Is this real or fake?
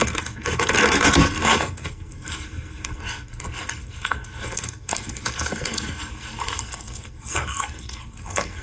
fake